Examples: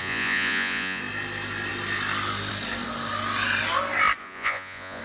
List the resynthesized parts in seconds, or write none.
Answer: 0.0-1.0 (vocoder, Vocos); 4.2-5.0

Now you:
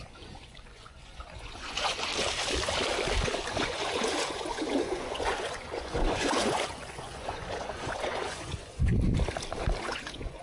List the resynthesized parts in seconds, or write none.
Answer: 0.0-2.1 (vocoder, Vocos); 3.2-8.9; 9.8-10.4

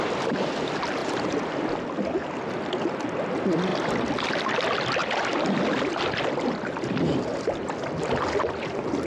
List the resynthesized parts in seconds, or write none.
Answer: 0.0-1.0 (vocoder, BigVGAN v2); 2.5-5.0; 8.4-9.1

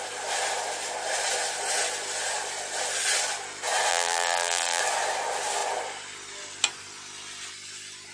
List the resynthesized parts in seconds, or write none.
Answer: 3.9-4.8 (vocoder, BigVGAN v2)